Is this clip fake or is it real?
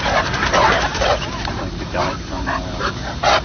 fake